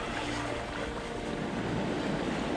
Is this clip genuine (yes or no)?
yes